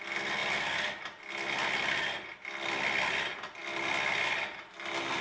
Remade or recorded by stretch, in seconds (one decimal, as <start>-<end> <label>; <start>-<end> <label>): 0.0-5.2 recorded